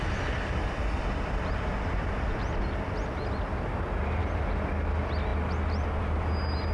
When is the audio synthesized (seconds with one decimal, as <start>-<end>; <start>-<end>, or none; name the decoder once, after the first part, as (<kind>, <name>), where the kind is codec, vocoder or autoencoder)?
none